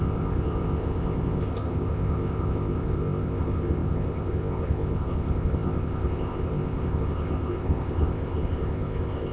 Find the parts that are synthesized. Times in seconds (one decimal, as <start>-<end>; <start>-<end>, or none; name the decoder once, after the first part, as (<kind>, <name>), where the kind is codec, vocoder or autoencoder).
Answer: 0.0-9.3 (codec, ZipCodec)